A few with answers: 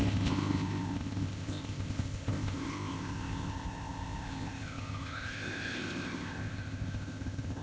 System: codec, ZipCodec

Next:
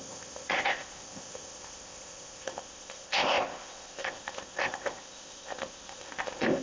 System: codec, ZipCodec